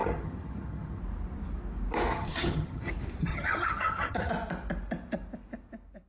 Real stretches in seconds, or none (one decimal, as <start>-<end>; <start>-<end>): 1.0-2.1; 2.9-3.3; 4.3-6.1